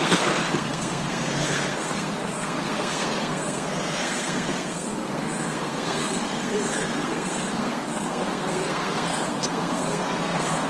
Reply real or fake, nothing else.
fake